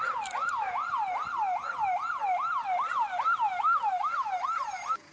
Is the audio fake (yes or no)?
no